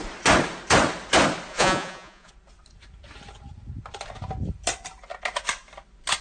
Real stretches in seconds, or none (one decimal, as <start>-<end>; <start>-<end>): 0.0-1.5; 2.3-6.2